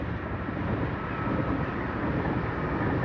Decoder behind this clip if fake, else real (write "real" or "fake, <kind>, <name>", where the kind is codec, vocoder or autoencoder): real